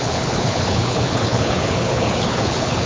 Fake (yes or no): yes